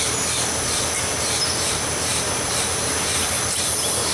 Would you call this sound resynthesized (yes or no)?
no